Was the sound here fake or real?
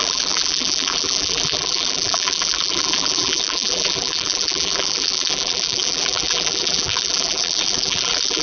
fake